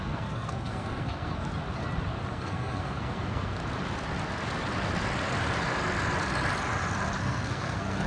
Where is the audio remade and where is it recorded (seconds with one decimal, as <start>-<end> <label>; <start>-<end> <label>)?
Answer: 0.0-1.5 remade; 1.5-2.3 recorded; 2.3-3.6 remade; 3.6-7.2 recorded; 7.2-8.1 remade